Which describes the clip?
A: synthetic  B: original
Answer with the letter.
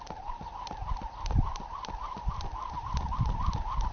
B